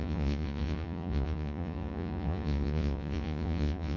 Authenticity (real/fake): fake